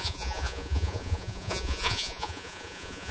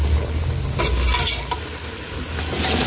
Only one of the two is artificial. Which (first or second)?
first